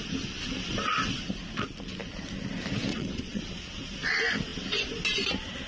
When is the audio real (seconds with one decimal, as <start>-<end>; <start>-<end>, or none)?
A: 0.0-2.9; 3.4-5.7